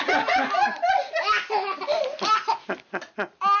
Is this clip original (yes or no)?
yes